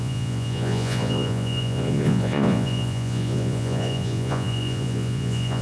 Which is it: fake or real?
fake